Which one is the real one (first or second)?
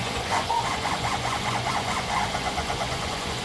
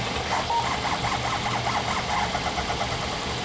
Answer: second